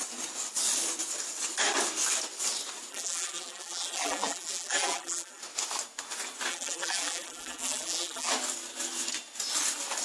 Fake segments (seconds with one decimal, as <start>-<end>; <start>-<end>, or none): 2.9-5.4; 6.5-8.3